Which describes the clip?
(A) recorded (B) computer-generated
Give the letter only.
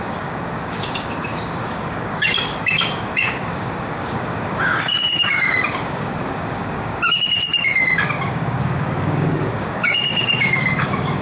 B